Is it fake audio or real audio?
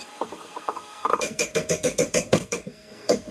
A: fake